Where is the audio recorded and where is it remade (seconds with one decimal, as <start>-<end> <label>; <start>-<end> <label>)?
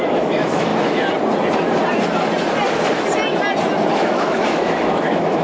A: 0.0-0.7 remade; 0.7-3.9 recorded; 3.9-5.4 remade